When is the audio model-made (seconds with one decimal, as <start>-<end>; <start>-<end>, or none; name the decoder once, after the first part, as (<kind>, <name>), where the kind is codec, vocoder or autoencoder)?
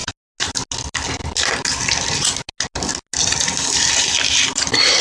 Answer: none